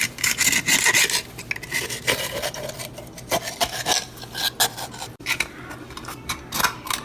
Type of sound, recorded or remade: recorded